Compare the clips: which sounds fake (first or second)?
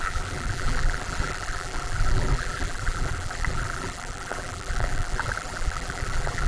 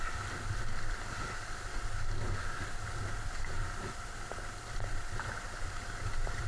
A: first